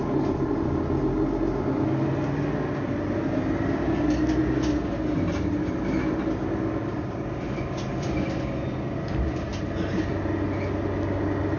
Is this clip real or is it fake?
real